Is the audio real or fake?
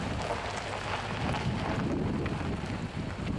real